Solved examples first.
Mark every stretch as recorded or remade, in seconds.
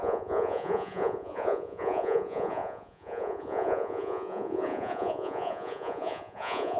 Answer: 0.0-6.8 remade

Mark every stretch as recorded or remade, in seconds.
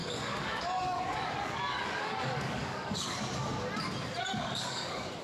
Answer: 0.0-3.5 remade; 3.5-4.2 recorded; 4.2-5.2 remade